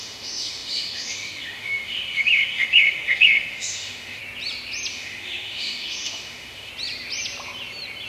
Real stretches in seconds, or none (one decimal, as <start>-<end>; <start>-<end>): 4.2-4.9; 6.7-8.1